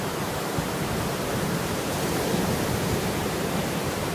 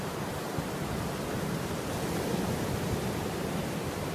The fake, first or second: first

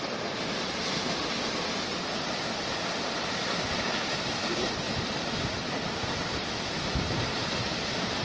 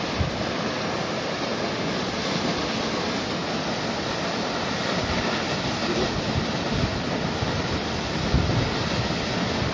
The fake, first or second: first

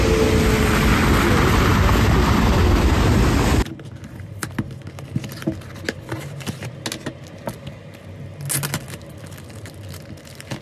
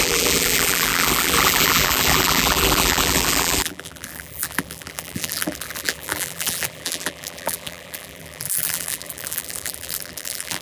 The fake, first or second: second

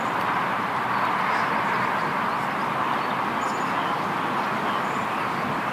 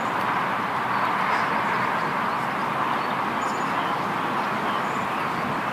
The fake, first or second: first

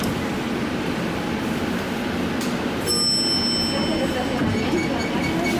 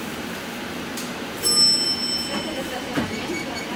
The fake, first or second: second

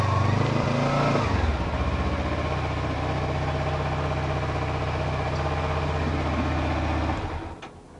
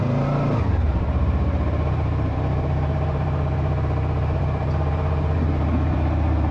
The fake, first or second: second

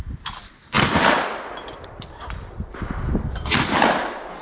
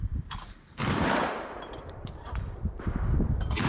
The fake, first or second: second